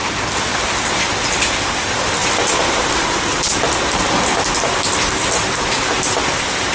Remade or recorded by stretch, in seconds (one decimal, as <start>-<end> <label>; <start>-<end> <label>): 0.0-6.7 recorded